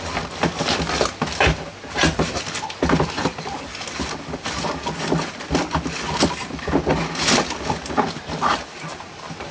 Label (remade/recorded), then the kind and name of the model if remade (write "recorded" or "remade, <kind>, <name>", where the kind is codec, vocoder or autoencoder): recorded